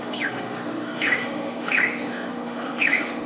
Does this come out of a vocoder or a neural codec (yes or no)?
yes